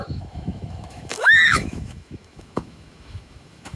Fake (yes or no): yes